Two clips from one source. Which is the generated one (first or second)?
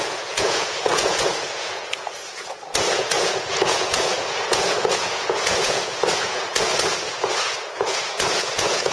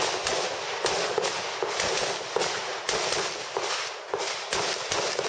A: first